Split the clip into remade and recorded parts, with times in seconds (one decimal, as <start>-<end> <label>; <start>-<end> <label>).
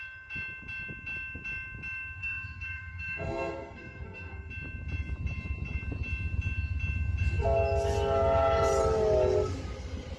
0.0-2.2 recorded; 2.2-4.5 remade; 4.5-10.2 recorded